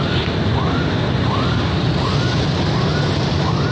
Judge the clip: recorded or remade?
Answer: recorded